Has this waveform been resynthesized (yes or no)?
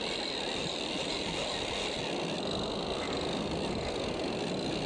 no